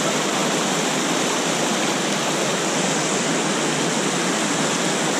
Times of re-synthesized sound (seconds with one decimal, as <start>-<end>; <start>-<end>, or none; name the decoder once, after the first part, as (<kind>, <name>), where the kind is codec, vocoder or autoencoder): 0.4-1.6 (vocoder, BigVGAN v2)

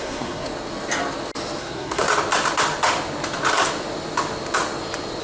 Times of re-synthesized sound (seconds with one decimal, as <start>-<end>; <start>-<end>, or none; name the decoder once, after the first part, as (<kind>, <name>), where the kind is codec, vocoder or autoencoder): 0.0-0.5 (codec, SNAC); 1.6-2.1

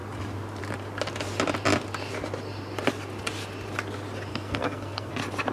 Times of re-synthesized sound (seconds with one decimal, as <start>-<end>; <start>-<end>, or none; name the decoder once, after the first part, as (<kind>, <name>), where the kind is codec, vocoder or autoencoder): 4.3-5.1 (codec, SNAC)

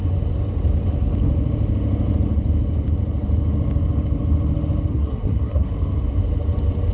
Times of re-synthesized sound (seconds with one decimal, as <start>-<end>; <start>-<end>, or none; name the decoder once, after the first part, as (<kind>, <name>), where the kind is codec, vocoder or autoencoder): 4.9-5.7 (codec, SNAC)

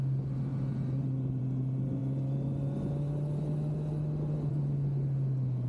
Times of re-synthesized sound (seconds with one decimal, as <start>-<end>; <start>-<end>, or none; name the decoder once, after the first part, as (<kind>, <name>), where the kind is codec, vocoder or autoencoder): none

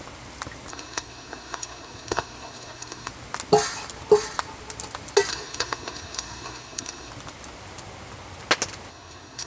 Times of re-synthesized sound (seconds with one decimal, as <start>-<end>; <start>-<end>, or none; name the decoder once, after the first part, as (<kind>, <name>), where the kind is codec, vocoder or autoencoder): 0.7-3.1 (codec, SNAC); 5.3-7.1; 8.9-9.5

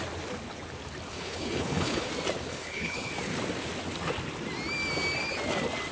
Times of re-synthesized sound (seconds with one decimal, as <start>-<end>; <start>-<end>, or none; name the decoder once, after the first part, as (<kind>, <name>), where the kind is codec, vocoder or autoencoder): 1.1-2.1 (codec, HILCodec); 2.5-3.1